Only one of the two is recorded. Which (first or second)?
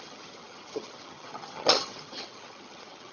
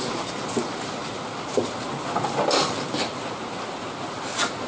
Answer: second